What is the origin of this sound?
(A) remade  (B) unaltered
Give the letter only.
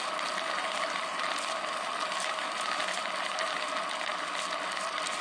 B